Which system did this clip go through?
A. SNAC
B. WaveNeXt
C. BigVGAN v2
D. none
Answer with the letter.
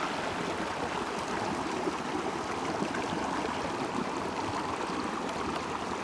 D